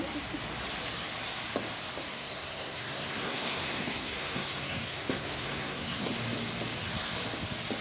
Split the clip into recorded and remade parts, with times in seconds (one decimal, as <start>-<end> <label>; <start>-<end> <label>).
0.0-2.1 recorded; 2.1-6.1 remade; 6.1-7.8 recorded